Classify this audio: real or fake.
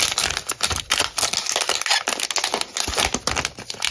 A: real